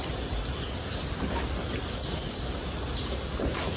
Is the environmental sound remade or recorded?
recorded